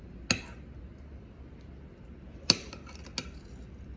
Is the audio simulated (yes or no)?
no